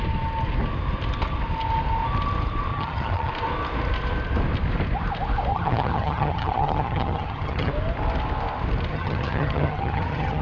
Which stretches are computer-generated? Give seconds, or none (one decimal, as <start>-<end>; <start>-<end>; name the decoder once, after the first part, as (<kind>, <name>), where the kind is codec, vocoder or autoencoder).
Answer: 2.7-3.3 (vocoder, HiFi-GAN); 5.5-7.7; 8.9-10.4